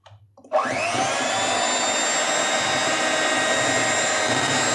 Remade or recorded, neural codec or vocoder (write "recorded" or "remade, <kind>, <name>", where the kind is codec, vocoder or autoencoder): recorded